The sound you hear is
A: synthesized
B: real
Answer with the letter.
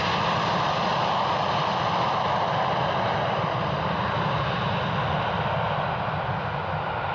B